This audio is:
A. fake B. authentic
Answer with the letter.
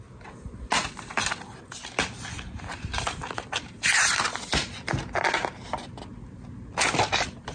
B